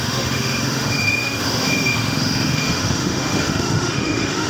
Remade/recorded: remade